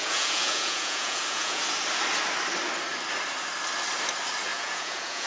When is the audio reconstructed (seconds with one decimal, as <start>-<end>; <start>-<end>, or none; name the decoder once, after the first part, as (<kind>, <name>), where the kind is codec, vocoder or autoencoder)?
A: 0.0-1.6 (vocoder, Vocos); 4.5-5.3